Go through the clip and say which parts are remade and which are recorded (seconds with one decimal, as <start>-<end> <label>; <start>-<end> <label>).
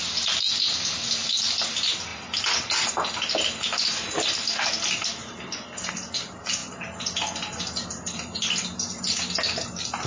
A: 0.0-10.1 recorded